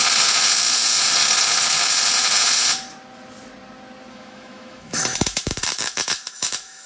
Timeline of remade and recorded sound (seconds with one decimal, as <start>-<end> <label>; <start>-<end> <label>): 0.0-4.1 recorded; 4.1-6.9 remade

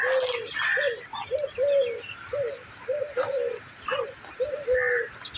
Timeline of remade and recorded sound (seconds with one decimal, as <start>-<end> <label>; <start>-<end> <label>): 0.0-5.4 recorded

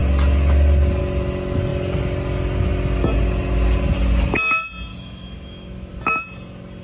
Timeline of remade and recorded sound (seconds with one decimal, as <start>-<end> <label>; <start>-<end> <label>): 0.0-4.9 recorded; 4.9-5.9 remade; 5.9-6.8 recorded

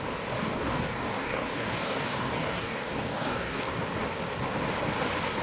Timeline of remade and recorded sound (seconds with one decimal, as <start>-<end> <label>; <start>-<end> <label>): 0.0-0.4 recorded; 0.4-3.6 remade; 3.6-5.4 recorded